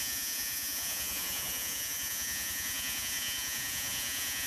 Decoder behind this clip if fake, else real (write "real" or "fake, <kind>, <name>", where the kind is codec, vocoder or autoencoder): fake, vocoder, Vocos